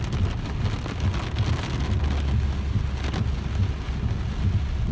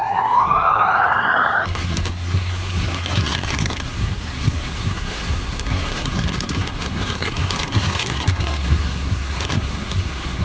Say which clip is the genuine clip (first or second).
first